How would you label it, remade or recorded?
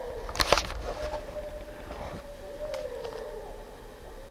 recorded